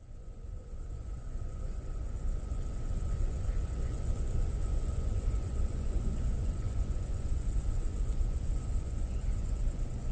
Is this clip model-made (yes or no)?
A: yes